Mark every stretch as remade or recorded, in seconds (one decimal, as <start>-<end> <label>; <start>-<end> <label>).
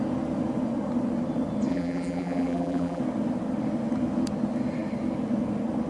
0.0-1.7 recorded; 1.7-3.0 remade; 3.0-5.9 recorded